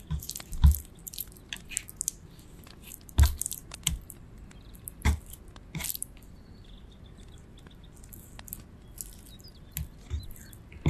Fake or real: real